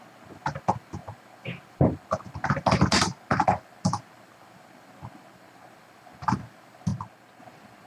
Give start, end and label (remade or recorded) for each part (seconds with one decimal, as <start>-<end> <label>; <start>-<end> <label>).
0.0-7.9 recorded